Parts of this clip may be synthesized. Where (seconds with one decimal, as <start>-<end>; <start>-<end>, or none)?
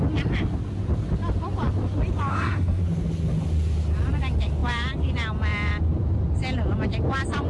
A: 2.3-2.8